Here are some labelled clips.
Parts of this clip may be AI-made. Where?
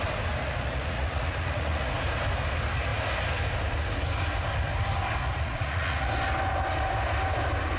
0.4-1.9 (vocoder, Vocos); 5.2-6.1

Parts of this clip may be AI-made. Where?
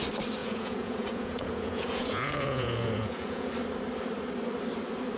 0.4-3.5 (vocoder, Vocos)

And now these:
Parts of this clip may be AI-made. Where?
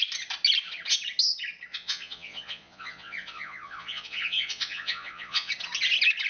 1.7-5.5 (vocoder, Vocos)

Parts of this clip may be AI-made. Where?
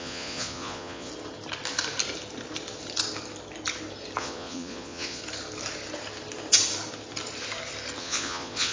0.0-1.1 (vocoder, Vocos); 4.2-5.2; 8.0-8.7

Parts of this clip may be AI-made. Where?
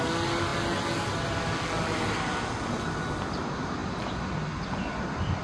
none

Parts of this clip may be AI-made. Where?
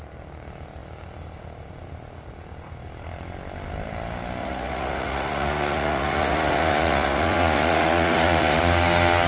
4.4-8.6 (vocoder, Vocos)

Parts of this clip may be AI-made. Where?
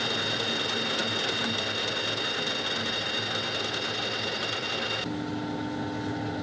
none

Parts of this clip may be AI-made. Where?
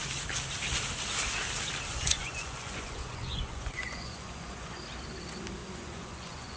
1.9-4.8 (vocoder, Vocos); 5.6-6.6